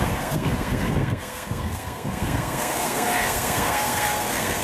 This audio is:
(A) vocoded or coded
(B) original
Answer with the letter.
A